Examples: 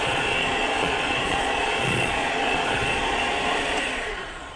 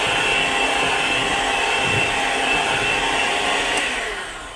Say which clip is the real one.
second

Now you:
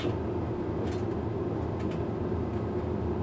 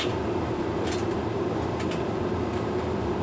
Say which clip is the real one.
first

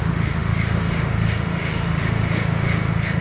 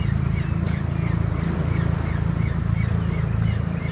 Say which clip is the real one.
second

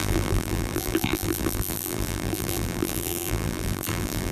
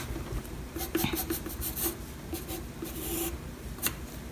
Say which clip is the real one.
second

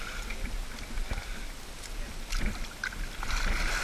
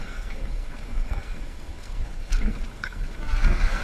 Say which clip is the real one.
first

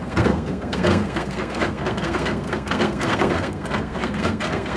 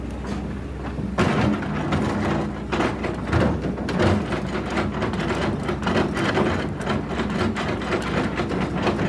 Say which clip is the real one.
second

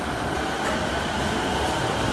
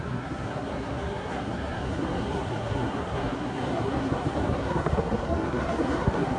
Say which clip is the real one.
first